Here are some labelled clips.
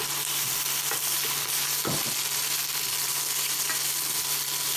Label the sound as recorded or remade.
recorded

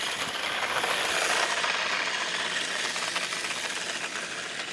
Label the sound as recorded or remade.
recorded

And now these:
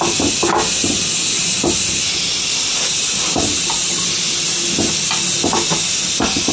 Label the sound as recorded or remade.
recorded